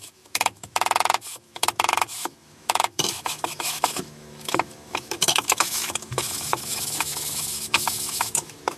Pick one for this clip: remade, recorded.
remade